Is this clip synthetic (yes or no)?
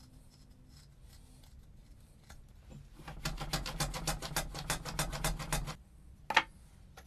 no